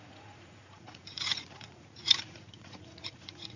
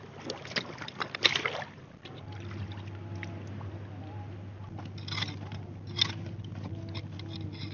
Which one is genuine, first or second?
second